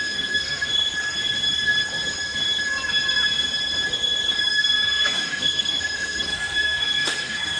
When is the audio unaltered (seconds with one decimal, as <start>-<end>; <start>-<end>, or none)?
0.7-4.4